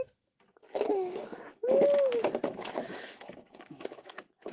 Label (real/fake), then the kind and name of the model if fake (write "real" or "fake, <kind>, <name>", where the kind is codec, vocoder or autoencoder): fake, autoencoder, DAC-VAE